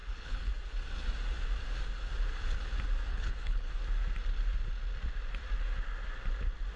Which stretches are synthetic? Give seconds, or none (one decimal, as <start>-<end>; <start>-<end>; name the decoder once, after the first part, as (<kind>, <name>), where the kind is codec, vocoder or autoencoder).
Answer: 0.0-0.5 (codec, HILCodec); 3.1-3.7